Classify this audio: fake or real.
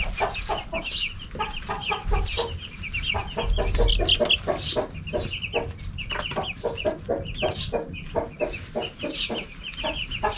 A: real